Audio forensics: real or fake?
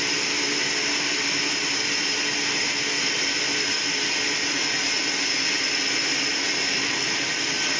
real